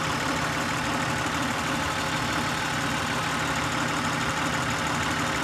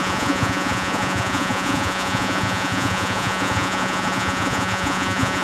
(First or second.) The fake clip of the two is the second